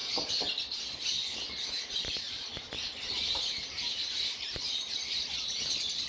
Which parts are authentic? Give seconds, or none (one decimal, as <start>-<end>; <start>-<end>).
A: 2.5-6.1